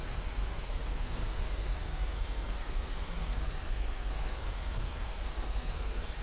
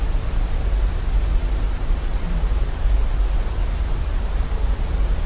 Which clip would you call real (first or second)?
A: second